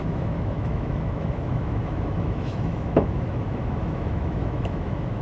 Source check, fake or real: fake